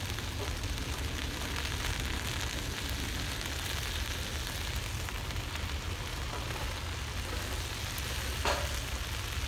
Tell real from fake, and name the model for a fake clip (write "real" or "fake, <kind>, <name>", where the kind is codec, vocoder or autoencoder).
real